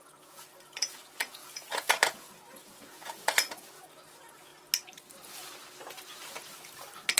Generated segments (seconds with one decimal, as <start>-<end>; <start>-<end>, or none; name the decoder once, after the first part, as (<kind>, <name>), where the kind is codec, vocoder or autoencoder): 0.0-4.5 (vocoder, Vocos)